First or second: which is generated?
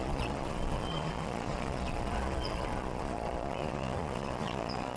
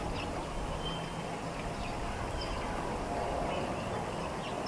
first